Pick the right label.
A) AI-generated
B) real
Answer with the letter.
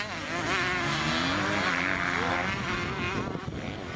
B